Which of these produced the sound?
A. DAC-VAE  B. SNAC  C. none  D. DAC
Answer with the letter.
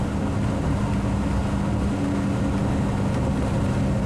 C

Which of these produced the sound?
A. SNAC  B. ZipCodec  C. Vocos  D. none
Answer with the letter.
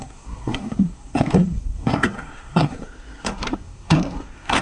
A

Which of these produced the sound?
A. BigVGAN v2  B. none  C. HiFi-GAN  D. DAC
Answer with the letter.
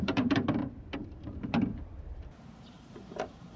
A